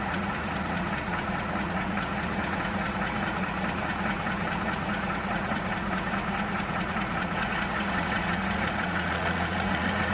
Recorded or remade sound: remade